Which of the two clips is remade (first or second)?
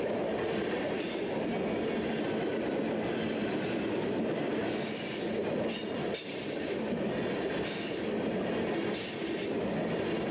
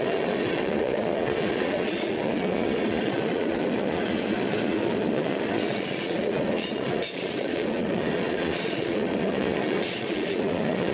second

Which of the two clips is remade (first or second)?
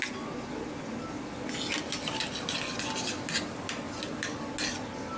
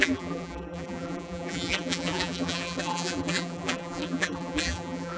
second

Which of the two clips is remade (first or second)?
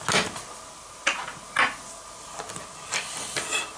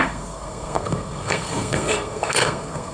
second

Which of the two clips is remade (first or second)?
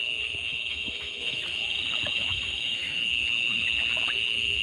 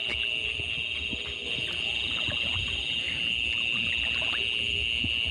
first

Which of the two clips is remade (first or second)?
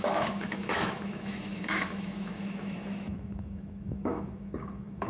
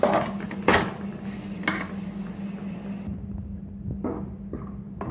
first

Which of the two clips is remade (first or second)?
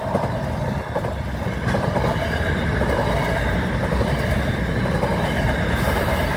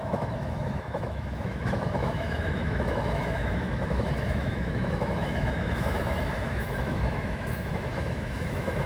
second